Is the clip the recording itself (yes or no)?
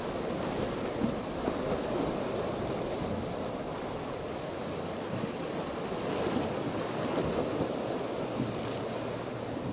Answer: yes